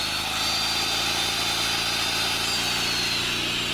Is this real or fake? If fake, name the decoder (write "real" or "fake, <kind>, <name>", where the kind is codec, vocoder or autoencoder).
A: real